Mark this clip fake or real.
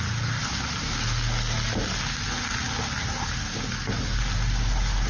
real